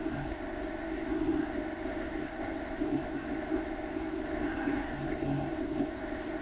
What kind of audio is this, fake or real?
fake